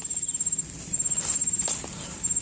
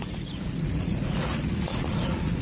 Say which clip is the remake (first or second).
second